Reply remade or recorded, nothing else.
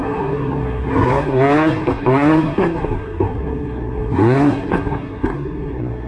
remade